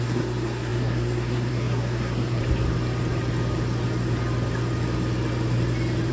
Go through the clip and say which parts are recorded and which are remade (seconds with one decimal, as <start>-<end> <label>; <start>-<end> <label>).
0.0-2.4 remade; 2.4-6.1 recorded